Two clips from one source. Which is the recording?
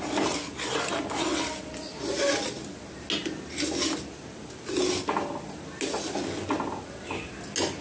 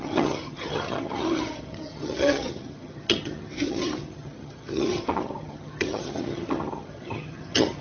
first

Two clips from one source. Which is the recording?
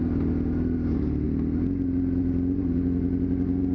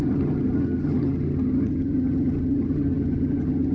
first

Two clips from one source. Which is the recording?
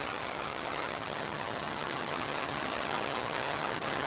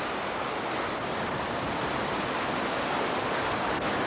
second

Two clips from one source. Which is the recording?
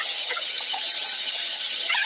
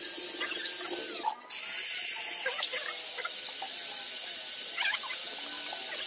second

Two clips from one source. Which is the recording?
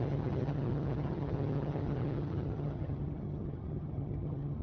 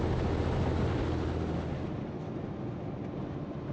second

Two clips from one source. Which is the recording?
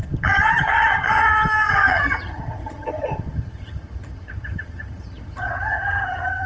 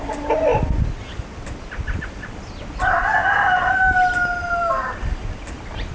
second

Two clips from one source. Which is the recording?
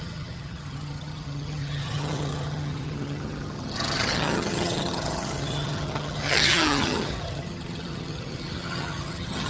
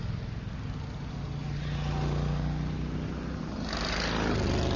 second